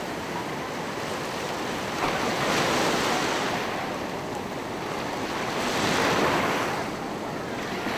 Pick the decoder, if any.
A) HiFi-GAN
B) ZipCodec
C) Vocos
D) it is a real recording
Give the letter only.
D